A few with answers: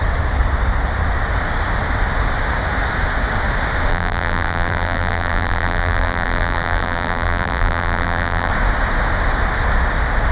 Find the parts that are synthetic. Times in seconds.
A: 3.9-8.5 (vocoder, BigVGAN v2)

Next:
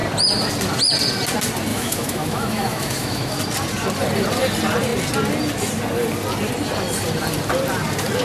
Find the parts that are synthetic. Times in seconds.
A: 1.7-3.3 (autoencoder, DAC-VAE)

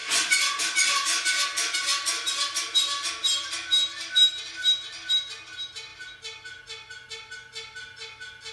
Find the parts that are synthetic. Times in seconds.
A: 0.0-0.6 (vocoder, Vocos)

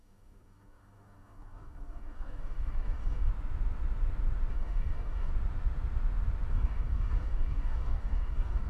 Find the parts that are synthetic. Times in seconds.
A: 0.0-3.3 (codec, DAC); 4.5-5.3; 6.5-8.7